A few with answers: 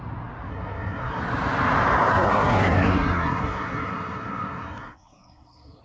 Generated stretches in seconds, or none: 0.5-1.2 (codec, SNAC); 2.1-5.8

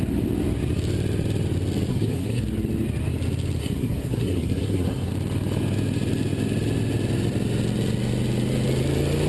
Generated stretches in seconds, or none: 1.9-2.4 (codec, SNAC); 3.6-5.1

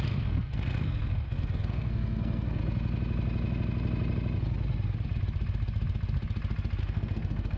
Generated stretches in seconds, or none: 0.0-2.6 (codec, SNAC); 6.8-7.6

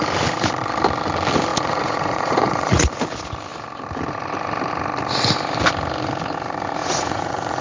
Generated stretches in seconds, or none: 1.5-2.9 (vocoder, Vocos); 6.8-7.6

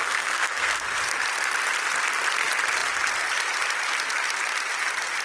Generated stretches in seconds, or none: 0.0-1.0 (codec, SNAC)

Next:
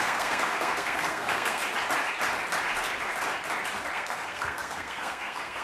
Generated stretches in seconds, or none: 0.0-1.6 (codec, SNAC); 3.9-5.6